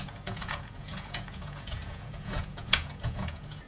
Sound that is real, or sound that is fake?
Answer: fake